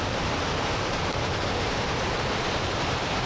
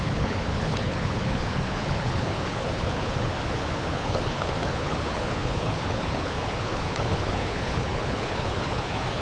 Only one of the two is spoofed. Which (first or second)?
second